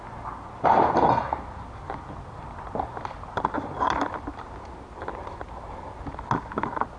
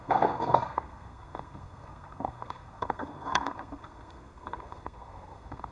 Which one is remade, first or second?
second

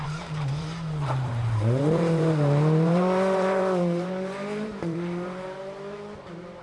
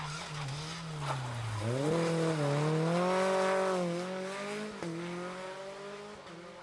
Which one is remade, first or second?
first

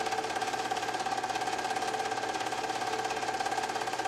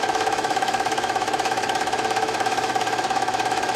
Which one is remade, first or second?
second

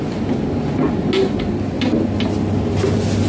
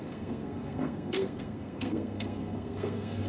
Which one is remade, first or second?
second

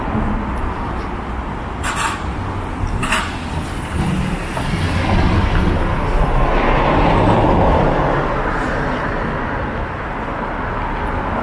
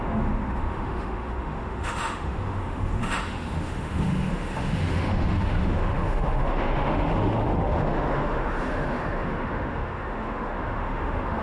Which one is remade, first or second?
second